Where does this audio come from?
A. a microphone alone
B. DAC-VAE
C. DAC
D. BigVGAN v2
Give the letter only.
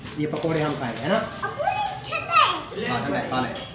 A